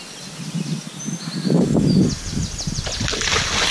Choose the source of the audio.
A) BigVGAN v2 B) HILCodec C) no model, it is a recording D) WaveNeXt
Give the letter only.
C